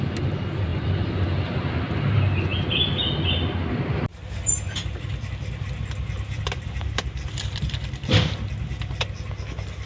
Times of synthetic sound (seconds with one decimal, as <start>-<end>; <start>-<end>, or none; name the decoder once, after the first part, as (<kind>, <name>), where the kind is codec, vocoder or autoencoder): none